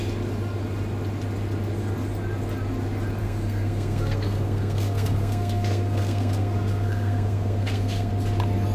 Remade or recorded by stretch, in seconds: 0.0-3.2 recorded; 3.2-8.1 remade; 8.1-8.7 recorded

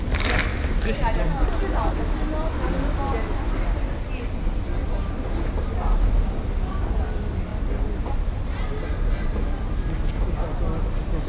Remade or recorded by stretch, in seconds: 0.0-11.3 recorded

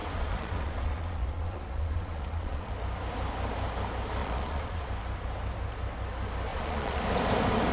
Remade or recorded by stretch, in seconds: 0.0-2.7 remade; 2.7-4.2 recorded; 4.2-4.9 remade; 4.9-6.5 recorded; 6.5-7.0 remade; 7.0-7.7 recorded

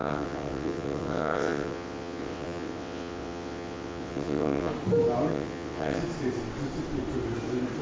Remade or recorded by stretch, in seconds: 0.0-4.7 remade; 4.7-5.3 recorded; 5.3-6.0 remade; 6.0-7.8 recorded